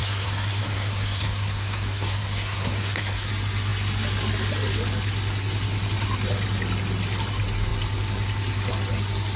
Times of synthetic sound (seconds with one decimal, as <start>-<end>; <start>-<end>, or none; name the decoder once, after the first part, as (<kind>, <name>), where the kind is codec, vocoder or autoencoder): 0.0-3.3 (codec, SNAC)